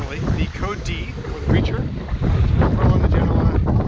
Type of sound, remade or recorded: recorded